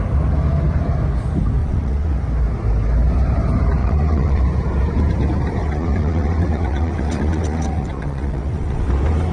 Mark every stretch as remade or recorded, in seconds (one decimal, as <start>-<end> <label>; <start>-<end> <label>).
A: 0.0-1.6 recorded; 1.6-2.1 remade; 2.1-3.8 recorded; 3.8-4.4 remade; 4.4-5.6 recorded; 5.6-8.9 remade; 8.9-9.3 recorded